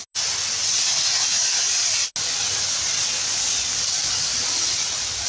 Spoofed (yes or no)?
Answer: no